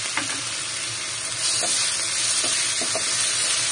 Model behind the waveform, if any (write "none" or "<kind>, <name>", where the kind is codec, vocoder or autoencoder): none